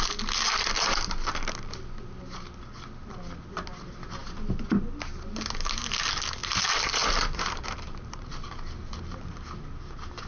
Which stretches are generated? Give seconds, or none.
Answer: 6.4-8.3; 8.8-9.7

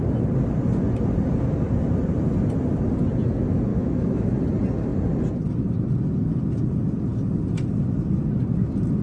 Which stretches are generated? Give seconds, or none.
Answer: 3.7-4.3

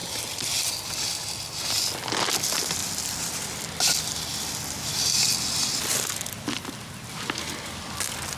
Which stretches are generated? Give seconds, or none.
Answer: 0.0-0.7; 2.8-5.2

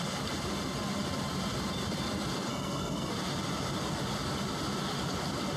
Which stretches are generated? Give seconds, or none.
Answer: 2.5-3.1

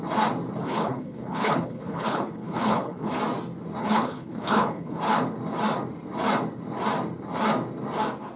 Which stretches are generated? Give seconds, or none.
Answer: 0.6-3.1; 3.8-5.0

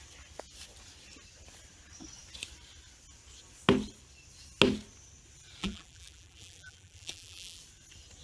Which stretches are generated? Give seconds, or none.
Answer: 5.6-7.6